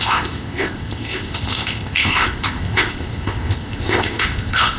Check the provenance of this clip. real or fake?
fake